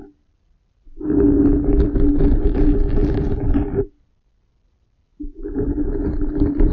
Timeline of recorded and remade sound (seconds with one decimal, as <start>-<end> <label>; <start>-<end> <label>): 0.0-2.1 recorded; 2.1-4.0 remade; 4.0-5.1 recorded; 5.1-5.7 remade; 5.7-6.7 recorded